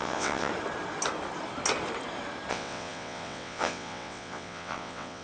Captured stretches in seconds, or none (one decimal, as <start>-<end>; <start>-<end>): 0.5-2.5